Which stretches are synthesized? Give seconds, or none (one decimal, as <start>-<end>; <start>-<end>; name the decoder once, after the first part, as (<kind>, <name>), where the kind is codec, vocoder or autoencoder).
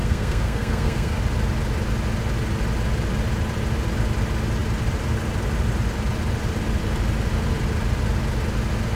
0.0-1.2 (codec, SNAC)